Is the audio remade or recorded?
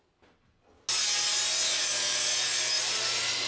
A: recorded